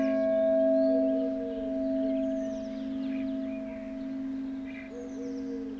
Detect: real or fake real